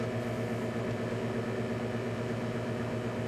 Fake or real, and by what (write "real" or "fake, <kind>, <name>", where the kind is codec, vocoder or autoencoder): real